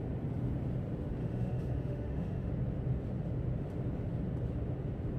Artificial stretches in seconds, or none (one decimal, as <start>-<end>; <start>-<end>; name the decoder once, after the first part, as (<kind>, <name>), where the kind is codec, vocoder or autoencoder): 1.2-2.5 (autoencoder, DAC-VAE)